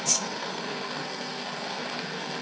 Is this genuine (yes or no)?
no